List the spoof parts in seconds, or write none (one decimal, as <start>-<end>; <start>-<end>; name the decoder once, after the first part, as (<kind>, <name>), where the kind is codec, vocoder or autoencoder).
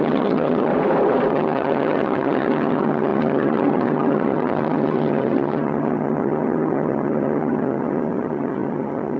0.0-0.7 (vocoder, HiFi-GAN); 1.3-9.2